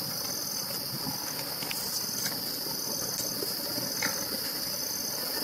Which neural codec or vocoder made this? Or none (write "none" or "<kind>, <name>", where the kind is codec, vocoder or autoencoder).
none